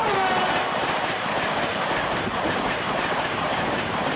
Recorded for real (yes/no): no